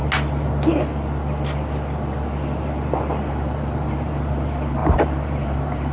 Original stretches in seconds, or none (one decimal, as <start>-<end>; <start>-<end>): 0.0-3.1